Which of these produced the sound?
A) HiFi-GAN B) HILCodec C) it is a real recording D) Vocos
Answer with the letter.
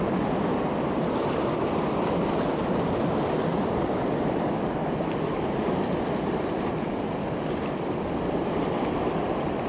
C